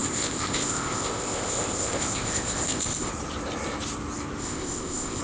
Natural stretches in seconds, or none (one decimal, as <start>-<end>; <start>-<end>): 3.1-4.4